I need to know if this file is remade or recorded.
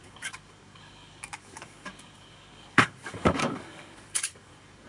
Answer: remade